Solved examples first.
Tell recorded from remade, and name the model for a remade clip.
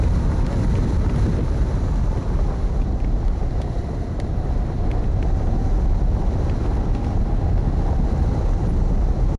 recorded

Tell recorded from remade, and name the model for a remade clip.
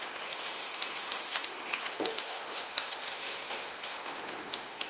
remade, autoencoder, DAC-VAE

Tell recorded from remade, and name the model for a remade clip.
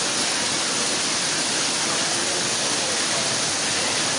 recorded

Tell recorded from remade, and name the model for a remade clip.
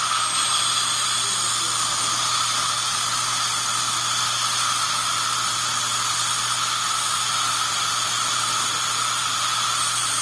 recorded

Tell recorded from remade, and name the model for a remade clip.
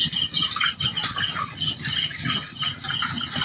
recorded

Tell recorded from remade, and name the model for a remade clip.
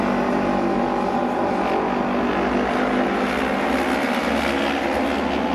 recorded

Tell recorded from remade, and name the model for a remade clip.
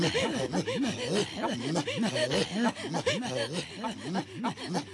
recorded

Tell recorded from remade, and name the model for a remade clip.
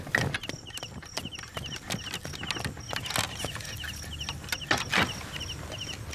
recorded